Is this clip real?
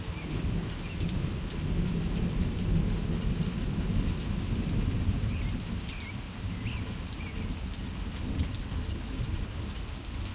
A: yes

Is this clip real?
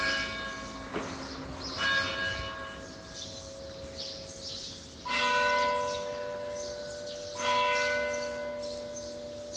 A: yes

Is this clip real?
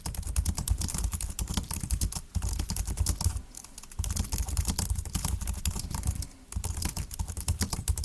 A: yes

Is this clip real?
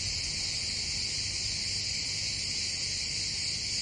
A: yes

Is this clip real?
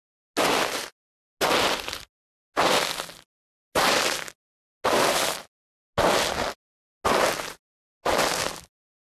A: yes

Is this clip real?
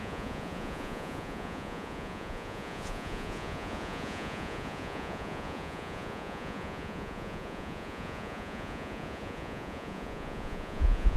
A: no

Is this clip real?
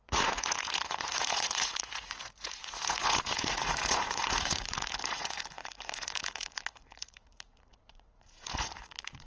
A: no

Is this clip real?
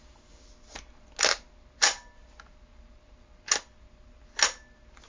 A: yes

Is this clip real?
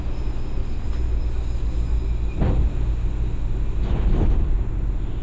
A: yes